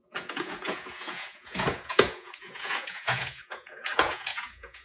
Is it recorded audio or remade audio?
remade